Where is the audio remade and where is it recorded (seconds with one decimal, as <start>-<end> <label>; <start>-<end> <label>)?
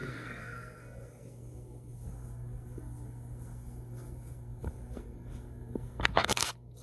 0.0-6.8 remade